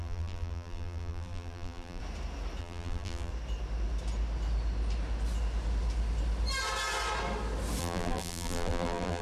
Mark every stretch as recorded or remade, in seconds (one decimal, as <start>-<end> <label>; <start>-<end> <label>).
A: 0.0-2.0 remade; 2.0-2.6 recorded; 2.6-3.3 remade; 3.3-7.8 recorded; 7.8-9.2 remade